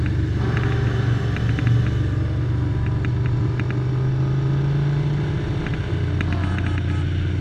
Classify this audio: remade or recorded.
recorded